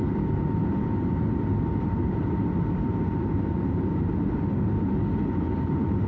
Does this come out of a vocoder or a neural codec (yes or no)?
no